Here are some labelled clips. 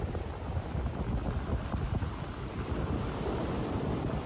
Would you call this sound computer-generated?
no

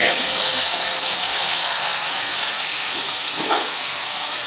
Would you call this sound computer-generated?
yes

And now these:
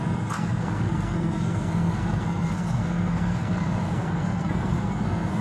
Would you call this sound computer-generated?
yes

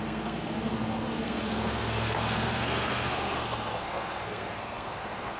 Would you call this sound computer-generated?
yes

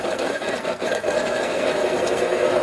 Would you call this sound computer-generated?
yes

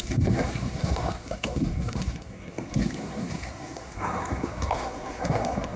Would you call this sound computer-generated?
yes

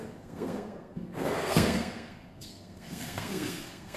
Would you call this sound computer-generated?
yes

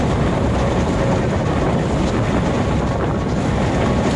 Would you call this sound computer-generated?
no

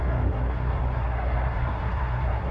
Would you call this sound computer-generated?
yes